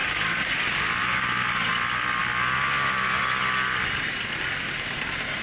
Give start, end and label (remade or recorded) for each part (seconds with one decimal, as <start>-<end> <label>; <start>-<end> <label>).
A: 0.0-0.5 remade; 0.5-1.0 recorded; 1.0-1.7 remade; 1.7-5.4 recorded

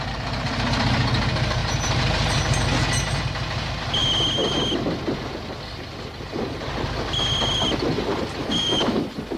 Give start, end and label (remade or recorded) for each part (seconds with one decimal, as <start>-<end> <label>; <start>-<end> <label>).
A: 0.0-8.4 recorded; 8.4-9.0 remade; 9.0-9.4 recorded

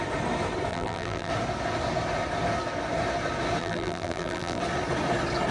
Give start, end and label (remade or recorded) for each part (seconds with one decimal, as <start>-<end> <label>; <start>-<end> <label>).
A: 0.0-0.7 recorded; 0.7-1.3 remade; 1.3-3.6 recorded; 3.6-4.6 remade; 4.6-5.5 recorded

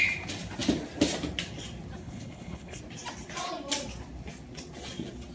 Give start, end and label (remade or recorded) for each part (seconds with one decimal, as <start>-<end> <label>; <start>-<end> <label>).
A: 0.0-2.0 recorded; 2.0-2.8 remade; 2.8-5.3 recorded

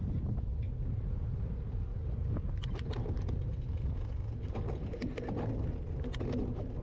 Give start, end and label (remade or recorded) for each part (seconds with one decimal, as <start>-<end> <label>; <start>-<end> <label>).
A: 0.0-1.9 recorded; 1.9-3.6 remade; 3.6-6.8 recorded

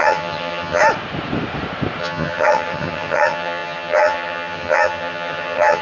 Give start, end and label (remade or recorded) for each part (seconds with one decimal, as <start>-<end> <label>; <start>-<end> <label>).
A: 0.0-0.8 remade; 0.8-2.0 recorded; 2.0-5.8 remade

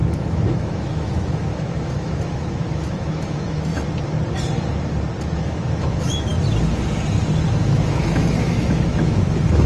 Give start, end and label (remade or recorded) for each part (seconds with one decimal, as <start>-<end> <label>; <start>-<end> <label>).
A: 0.0-3.7 remade; 3.7-5.2 recorded; 5.2-6.3 remade; 6.3-7.5 recorded; 7.5-9.7 remade

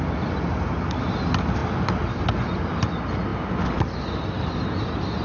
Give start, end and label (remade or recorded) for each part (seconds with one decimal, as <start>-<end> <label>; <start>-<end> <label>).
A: 0.0-5.2 recorded